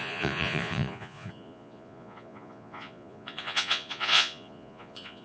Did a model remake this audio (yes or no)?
yes